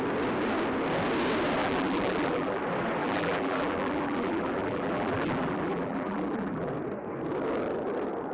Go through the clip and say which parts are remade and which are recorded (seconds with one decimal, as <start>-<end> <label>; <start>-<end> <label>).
0.0-1.6 recorded; 1.6-2.6 remade; 2.6-3.0 recorded; 3.0-6.7 remade; 6.7-8.3 recorded